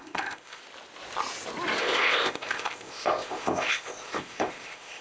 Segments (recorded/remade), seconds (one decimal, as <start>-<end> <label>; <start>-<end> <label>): 0.0-0.6 remade; 0.6-1.8 recorded; 1.8-5.0 remade